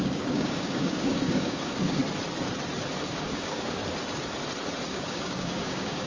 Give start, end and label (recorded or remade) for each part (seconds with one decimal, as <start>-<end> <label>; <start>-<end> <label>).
0.0-2.0 remade; 2.0-3.1 recorded; 3.1-3.8 remade; 3.8-4.9 recorded; 4.9-6.1 remade